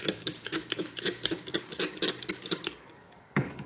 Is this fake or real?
fake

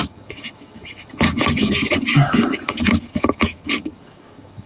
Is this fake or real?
fake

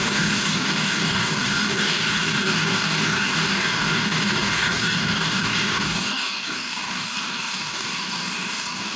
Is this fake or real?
fake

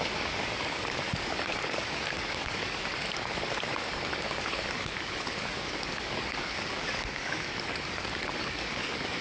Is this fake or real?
fake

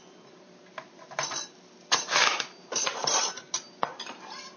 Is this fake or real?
real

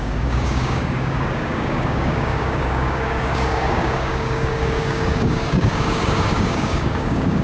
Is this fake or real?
fake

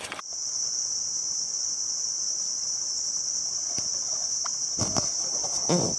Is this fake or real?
real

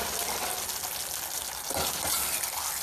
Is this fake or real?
real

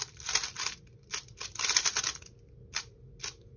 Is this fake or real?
real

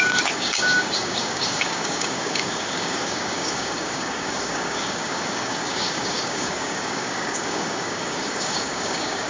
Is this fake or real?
fake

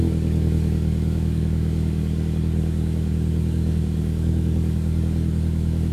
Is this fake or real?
fake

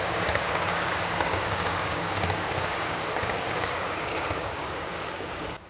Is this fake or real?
fake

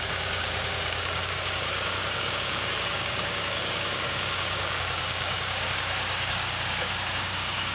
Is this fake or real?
fake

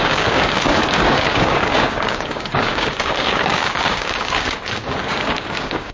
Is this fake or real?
fake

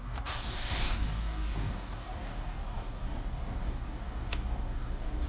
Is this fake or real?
fake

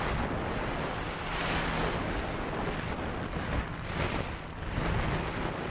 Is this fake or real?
real